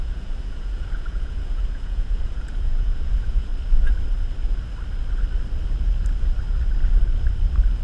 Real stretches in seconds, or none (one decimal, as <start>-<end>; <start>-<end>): 3.5-7.8